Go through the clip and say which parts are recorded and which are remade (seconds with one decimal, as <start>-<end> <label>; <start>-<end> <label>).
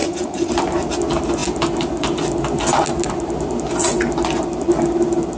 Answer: 0.0-0.5 remade; 0.5-5.4 recorded